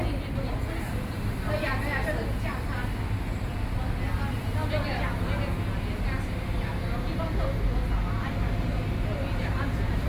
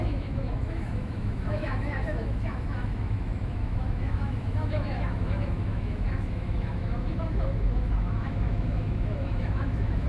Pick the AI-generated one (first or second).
second